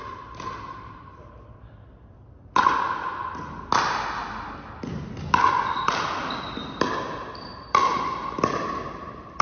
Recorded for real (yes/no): yes